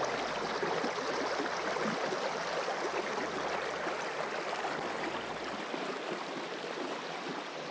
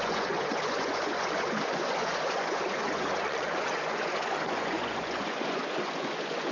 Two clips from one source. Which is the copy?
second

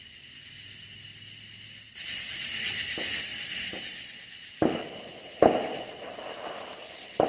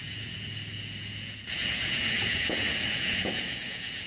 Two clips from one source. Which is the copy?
second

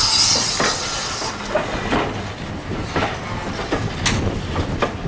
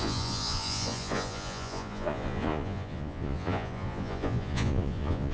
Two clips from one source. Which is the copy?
second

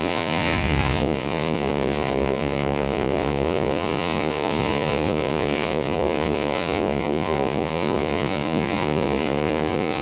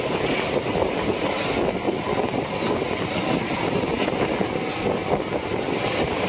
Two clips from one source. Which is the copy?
first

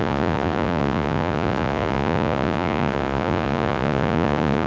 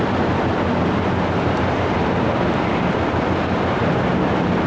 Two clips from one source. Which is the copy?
first